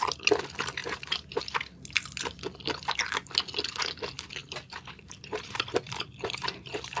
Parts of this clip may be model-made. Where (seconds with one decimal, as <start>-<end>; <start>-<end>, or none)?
0.8-1.4; 4.4-7.0